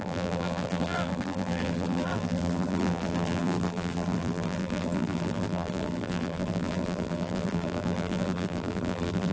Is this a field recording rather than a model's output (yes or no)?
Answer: no